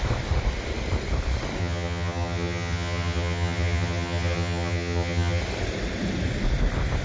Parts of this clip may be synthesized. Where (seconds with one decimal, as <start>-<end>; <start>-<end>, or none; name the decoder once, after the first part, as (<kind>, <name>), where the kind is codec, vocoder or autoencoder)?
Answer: 1.6-5.4 (vocoder, HiFi-GAN)